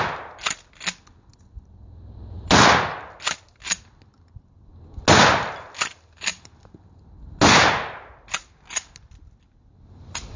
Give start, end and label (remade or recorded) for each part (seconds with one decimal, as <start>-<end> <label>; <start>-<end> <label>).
0.0-10.4 recorded